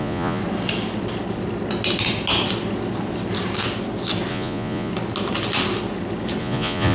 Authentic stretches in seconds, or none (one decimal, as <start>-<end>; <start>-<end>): 0.4-4.3; 4.9-6.4